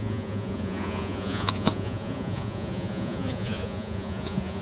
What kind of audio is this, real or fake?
fake